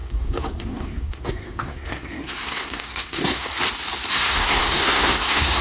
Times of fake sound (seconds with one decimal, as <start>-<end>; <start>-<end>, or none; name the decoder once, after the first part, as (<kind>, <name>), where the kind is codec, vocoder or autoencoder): 0.0-3.5 (codec, SNAC); 4.1-5.6